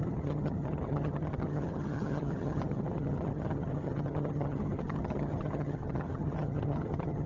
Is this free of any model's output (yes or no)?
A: no